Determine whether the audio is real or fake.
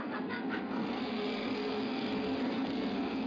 fake